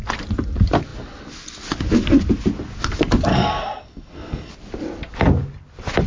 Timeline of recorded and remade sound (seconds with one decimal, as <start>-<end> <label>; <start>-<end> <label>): 0.0-3.3 recorded; 3.3-4.5 remade; 4.5-6.1 recorded